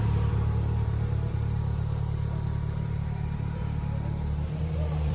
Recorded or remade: remade